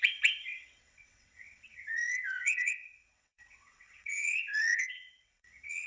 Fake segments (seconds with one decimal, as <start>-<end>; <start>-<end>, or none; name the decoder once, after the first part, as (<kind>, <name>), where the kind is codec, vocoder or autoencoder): 0.0-5.9 (vocoder, WaveNeXt)